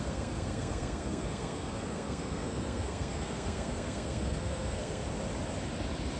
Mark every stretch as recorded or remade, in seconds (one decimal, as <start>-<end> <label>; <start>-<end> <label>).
0.0-5.0 remade; 5.0-6.2 recorded